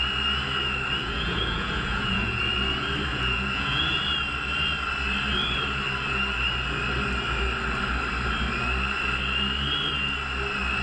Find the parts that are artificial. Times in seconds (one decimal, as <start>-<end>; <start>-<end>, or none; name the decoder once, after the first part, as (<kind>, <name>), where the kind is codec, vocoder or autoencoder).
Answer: 1.0-2.4 (vocoder, Vocos); 3.1-4.0